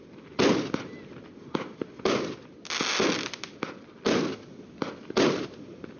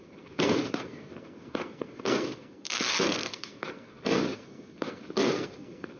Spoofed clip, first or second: second